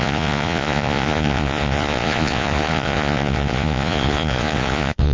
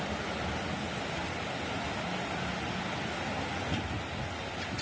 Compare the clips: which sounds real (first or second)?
second